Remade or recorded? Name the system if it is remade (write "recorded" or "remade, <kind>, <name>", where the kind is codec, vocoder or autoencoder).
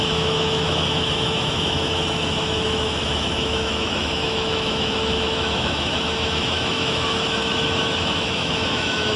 remade, autoencoder, DAC-VAE